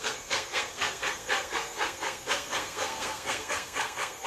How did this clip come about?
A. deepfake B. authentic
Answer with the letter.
A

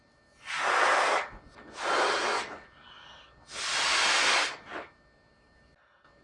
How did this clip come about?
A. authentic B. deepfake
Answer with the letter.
A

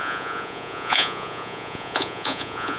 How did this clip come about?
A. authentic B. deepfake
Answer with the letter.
B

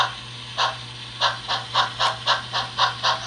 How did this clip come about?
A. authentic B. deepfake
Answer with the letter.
A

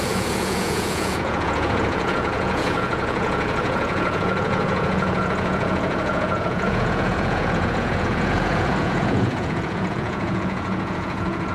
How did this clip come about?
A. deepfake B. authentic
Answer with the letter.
A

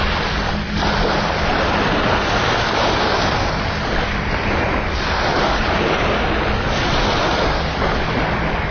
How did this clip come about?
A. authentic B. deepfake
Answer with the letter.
A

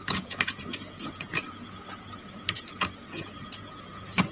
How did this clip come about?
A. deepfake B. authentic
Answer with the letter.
A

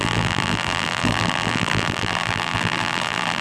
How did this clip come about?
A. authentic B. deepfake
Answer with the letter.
B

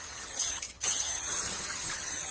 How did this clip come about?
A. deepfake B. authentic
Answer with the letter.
A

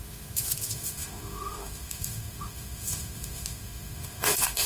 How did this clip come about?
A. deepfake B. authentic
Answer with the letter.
A